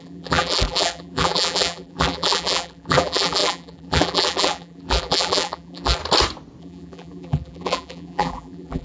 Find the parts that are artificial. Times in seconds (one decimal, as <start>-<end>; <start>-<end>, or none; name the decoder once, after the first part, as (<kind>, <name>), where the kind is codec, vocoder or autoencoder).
0.0-6.0 (vocoder, BigVGAN v2); 6.6-8.8